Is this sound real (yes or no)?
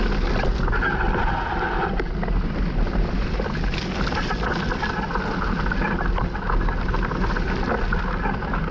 yes